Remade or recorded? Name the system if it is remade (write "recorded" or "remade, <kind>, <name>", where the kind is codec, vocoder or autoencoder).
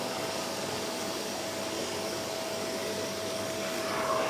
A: remade, codec, DAC